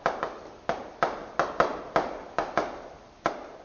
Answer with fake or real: real